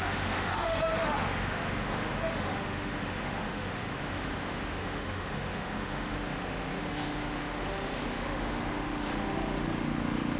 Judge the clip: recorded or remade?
remade